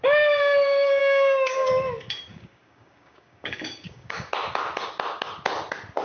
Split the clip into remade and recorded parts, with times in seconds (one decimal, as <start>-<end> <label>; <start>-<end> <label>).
0.0-1.0 recorded; 1.0-1.7 remade; 1.7-2.3 recorded; 2.3-4.3 remade; 4.3-6.0 recorded

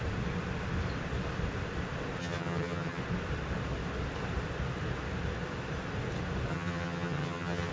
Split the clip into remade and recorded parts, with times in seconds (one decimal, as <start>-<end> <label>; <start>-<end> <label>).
0.0-2.2 recorded; 2.2-3.0 remade; 3.0-6.5 recorded; 6.5-7.7 remade

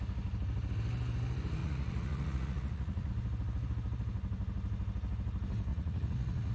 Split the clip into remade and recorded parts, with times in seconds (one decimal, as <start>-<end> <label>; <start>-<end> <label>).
0.0-1.6 recorded; 1.6-3.1 remade; 3.1-5.7 recorded; 5.7-6.5 remade

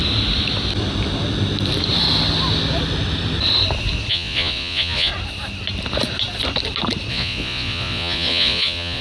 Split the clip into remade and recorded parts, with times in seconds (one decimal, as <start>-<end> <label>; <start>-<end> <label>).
0.0-4.1 recorded; 4.1-5.1 remade; 5.1-7.1 recorded; 7.1-9.0 remade

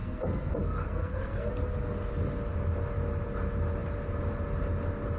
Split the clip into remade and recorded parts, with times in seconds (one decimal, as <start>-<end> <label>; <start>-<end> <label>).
0.0-1.5 remade; 1.5-5.2 recorded

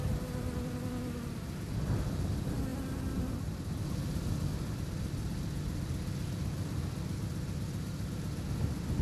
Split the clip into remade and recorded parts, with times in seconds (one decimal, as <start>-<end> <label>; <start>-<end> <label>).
0.0-9.0 recorded

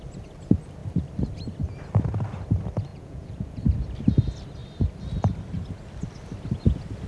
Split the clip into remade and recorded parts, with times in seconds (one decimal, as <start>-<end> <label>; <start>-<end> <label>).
0.0-2.9 recorded; 2.9-3.6 remade; 3.6-7.1 recorded